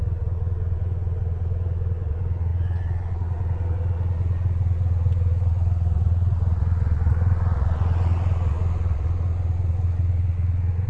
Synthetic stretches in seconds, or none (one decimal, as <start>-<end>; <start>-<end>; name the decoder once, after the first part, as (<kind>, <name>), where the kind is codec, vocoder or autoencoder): 0.0-10.9 (vocoder, Vocos)